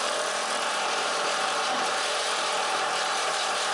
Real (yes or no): no